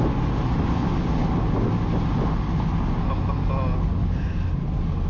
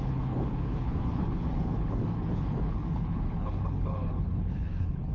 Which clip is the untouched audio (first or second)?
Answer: first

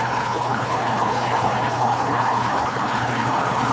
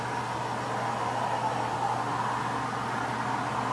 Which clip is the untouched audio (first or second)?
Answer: second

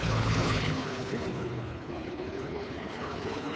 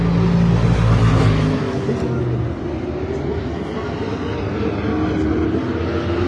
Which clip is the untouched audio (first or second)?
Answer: second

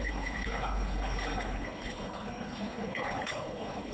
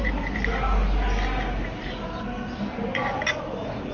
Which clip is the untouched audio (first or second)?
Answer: second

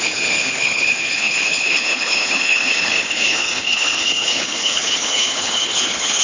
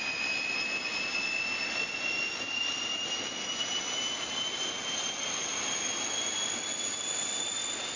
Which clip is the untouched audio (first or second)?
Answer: second